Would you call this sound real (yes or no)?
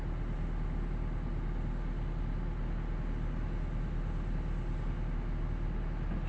yes